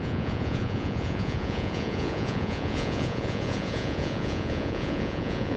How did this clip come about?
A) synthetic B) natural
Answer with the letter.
A